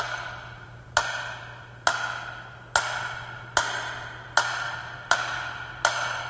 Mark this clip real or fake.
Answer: real